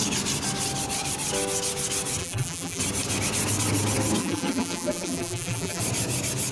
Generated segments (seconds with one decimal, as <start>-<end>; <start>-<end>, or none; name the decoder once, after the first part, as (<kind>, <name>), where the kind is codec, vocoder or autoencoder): 2.2-2.8 (vocoder, BigVGAN v2); 4.2-5.8